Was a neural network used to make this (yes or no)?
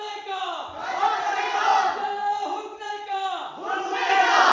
yes